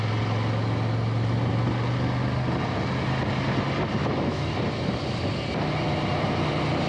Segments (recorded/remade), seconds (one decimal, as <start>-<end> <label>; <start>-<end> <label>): 0.0-4.0 recorded; 4.0-4.5 remade; 4.5-6.9 recorded